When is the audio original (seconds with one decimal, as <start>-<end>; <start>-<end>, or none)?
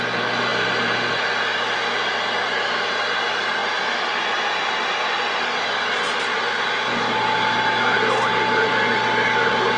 0.0-9.8